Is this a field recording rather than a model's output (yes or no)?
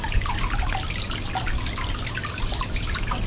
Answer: yes